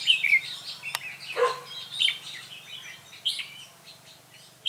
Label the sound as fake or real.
real